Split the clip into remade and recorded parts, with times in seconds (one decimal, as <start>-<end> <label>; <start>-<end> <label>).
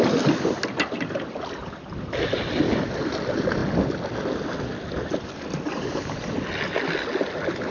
0.0-7.7 recorded